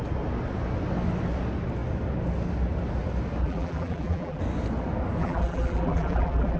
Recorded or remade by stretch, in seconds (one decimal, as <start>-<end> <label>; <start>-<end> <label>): 0.0-3.4 recorded; 3.4-4.4 remade; 4.4-5.2 recorded; 5.2-6.6 remade